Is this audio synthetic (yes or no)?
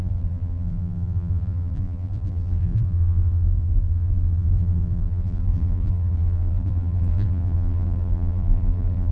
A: yes